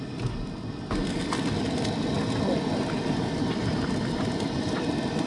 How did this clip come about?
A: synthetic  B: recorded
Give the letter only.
B